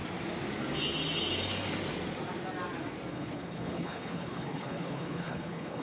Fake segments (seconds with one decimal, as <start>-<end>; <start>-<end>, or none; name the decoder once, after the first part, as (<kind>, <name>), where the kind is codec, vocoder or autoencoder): 3.1-5.8 (codec, HILCodec)